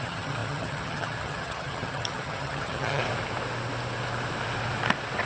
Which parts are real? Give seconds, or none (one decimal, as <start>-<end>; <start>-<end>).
3.0-5.3